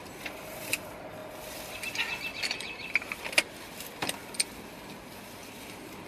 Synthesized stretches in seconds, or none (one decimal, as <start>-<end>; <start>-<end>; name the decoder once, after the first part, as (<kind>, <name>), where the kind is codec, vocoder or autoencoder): none